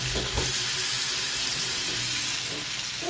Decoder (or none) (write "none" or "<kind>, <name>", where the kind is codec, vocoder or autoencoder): none